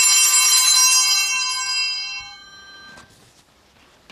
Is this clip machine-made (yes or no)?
no